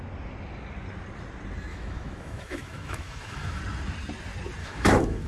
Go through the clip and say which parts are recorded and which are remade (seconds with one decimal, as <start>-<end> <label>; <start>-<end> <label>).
0.0-1.7 recorded; 1.7-3.6 remade; 3.6-4.6 recorded; 4.6-5.3 remade